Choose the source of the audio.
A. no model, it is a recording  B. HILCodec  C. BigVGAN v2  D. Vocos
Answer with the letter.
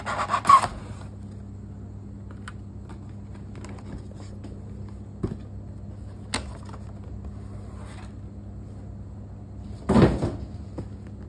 A